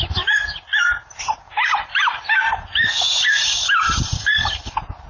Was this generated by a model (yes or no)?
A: yes